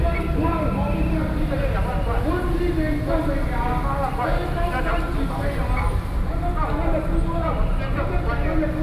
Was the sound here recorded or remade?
recorded